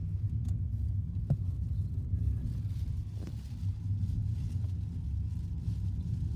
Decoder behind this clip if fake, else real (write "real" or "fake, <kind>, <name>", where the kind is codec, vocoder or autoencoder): real